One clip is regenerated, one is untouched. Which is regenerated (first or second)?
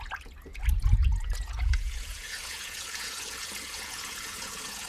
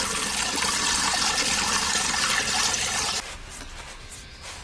first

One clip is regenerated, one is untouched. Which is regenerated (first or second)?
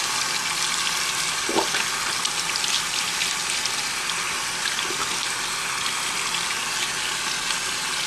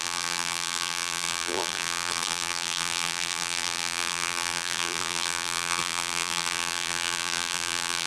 second